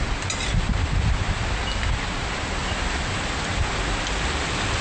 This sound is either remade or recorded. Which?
recorded